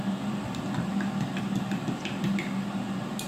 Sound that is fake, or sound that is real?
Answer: real